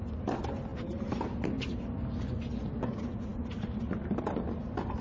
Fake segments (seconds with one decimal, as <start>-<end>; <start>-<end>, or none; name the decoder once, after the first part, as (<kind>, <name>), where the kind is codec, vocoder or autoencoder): none